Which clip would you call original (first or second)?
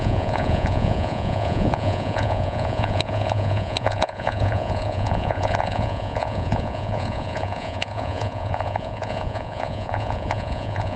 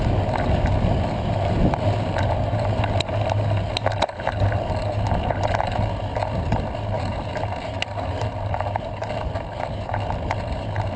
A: second